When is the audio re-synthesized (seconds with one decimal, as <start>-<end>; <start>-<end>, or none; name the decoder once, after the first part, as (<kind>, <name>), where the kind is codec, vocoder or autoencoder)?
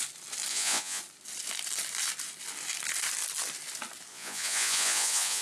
0.5-1.0 (vocoder, Vocos); 4.1-5.4